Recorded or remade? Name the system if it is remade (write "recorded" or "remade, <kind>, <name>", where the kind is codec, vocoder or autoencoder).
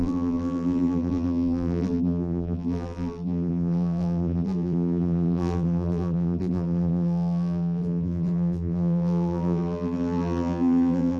remade, vocoder, BigVGAN v2